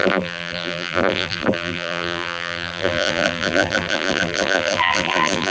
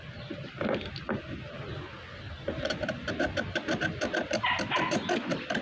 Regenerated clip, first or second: first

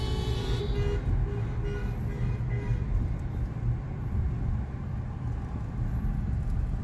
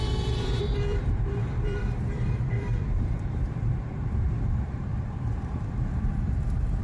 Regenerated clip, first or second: second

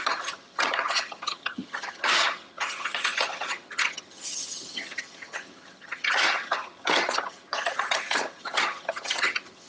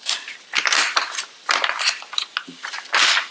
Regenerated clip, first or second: first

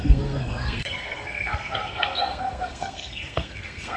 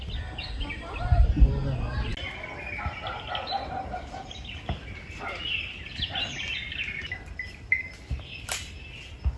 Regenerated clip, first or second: first